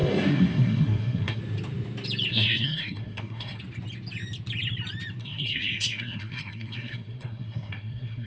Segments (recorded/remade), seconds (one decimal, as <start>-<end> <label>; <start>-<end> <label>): 0.0-1.4 remade; 1.4-2.3 recorded; 2.3-3.6 remade; 3.6-5.2 recorded; 5.2-8.3 remade